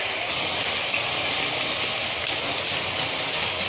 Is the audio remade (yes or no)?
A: no